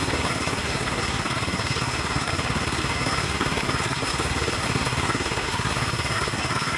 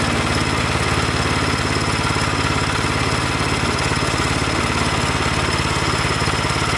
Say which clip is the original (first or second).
second